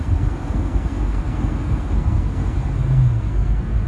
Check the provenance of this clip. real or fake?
fake